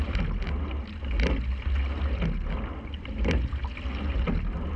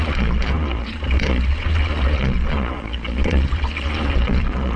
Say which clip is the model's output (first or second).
second